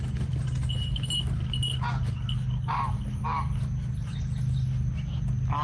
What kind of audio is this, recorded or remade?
recorded